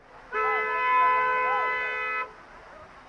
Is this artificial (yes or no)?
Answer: no